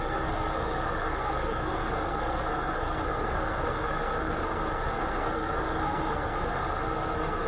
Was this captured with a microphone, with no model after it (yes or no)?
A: no